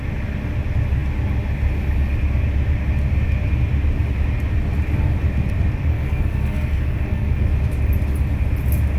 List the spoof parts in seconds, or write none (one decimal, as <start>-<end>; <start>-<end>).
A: 5.9-7.5